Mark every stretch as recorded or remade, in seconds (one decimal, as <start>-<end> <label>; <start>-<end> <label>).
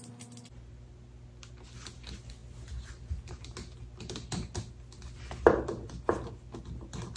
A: 0.0-7.2 recorded